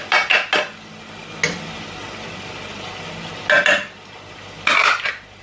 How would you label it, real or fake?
real